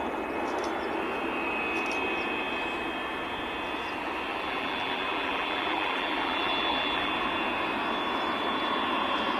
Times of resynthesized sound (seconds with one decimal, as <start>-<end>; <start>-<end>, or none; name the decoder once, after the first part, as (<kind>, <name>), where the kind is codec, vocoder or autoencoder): 4.3-7.1 (vocoder, BigVGAN v2)